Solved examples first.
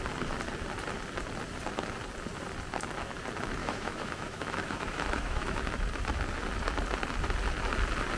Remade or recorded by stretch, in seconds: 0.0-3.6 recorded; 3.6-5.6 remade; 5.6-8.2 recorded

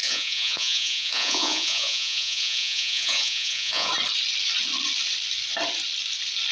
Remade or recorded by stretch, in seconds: 0.0-3.9 remade; 3.9-6.5 recorded

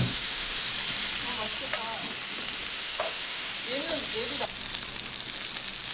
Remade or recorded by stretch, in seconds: 0.0-0.7 remade; 0.7-2.7 recorded; 2.7-3.5 remade; 3.5-5.9 recorded

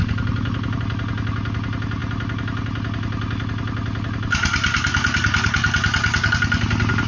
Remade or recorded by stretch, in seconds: 0.0-7.1 recorded

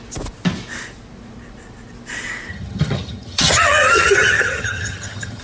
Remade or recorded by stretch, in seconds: 0.0-2.5 recorded; 2.5-5.4 remade

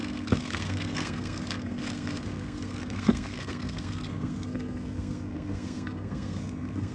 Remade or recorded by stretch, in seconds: 0.0-6.9 remade

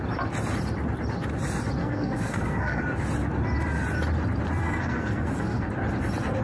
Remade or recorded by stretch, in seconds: 0.0-1.8 recorded; 1.8-2.8 remade; 2.8-4.6 recorded; 4.6-5.7 remade; 5.7-6.4 recorded

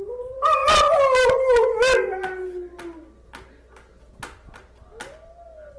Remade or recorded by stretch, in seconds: 0.0-5.8 recorded